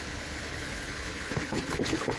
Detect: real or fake fake